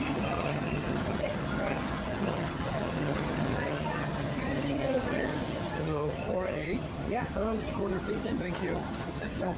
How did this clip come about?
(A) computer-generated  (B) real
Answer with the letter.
A